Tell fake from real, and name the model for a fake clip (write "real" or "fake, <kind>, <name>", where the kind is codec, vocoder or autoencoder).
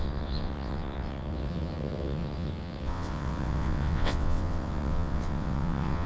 fake, vocoder, WaveNeXt